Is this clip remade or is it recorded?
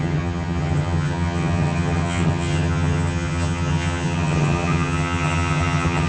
remade